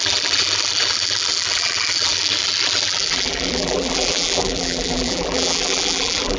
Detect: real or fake fake